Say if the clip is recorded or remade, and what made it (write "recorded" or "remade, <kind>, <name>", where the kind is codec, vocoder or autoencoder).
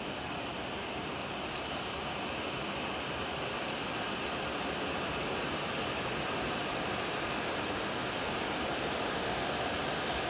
recorded